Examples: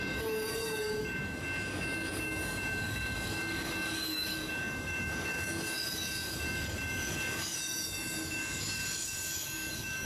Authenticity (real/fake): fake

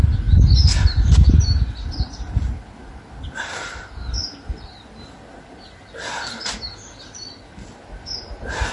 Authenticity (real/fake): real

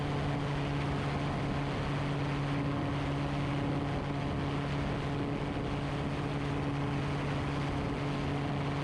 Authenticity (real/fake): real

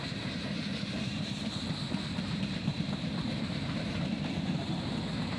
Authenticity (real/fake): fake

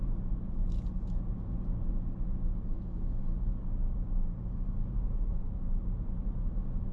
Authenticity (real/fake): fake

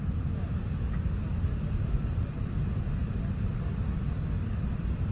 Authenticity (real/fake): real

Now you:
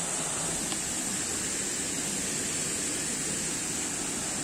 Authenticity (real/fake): real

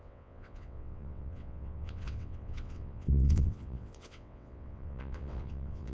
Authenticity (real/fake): fake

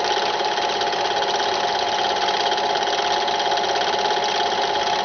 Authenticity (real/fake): real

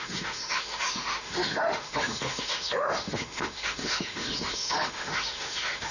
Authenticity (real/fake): fake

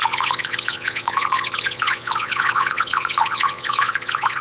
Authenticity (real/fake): fake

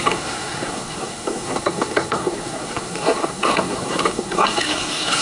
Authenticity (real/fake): fake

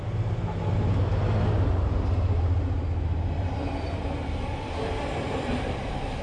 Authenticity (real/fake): real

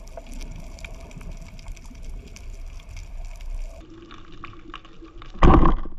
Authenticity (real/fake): real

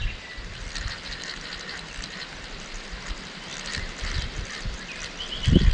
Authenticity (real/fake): real